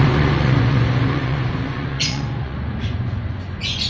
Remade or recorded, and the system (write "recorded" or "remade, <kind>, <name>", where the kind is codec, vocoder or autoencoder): remade, vocoder, Vocos